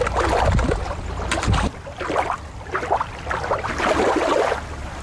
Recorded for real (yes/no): yes